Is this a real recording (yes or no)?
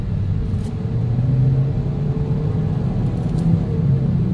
yes